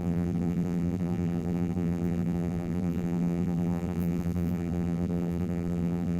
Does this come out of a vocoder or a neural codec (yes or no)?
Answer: yes